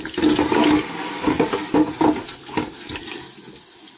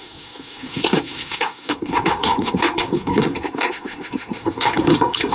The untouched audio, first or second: first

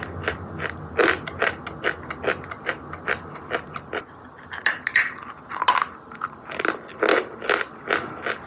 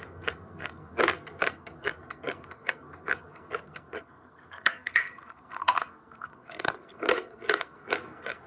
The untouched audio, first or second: first